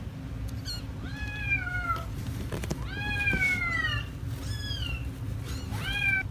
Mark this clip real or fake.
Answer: real